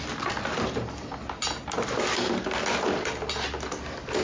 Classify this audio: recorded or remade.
recorded